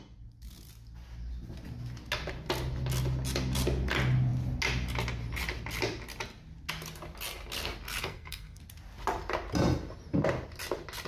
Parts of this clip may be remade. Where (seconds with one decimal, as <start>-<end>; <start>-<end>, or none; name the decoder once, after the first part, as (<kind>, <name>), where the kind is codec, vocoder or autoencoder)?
8.0-8.6 (codec, SNAC)